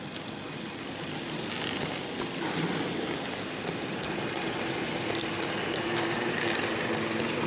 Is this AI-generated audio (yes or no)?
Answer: no